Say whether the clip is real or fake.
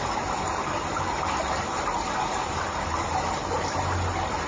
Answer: real